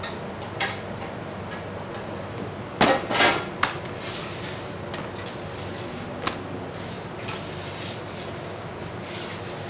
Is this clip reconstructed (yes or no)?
no